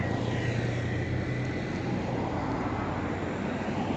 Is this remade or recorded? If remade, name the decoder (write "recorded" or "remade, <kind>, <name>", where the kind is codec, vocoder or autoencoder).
recorded